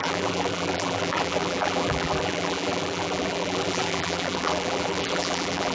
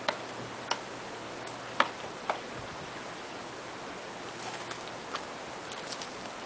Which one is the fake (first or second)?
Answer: first